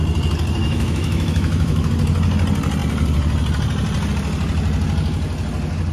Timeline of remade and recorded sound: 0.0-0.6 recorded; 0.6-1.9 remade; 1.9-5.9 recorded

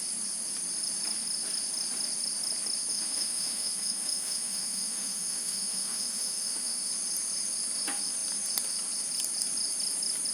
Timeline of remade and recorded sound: 0.0-2.9 recorded; 2.9-6.9 remade; 6.9-10.3 recorded

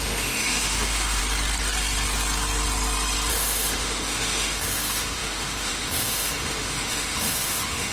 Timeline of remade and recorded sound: 0.0-1.2 remade; 1.2-3.3 recorded; 3.3-7.9 remade

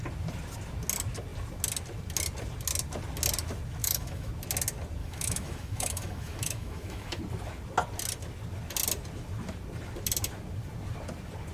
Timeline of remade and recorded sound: 0.0-3.8 recorded; 3.8-4.3 remade; 4.3-5.0 recorded; 5.0-7.2 remade; 7.2-11.5 recorded

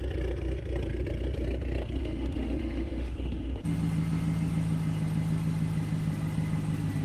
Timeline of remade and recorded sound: 0.0-2.0 recorded; 2.0-3.6 remade; 3.6-7.0 recorded

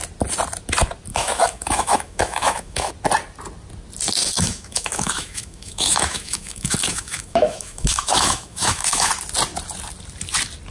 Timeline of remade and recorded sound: 0.0-1.1 recorded; 1.1-2.9 remade; 2.9-4.2 recorded; 4.2-9.1 remade; 9.1-10.7 recorded

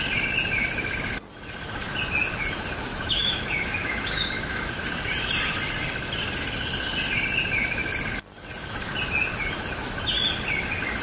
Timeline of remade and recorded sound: 0.0-2.9 recorded; 2.9-4.7 remade; 4.7-11.0 recorded

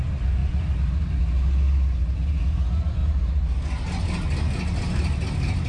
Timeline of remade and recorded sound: 0.0-5.7 recorded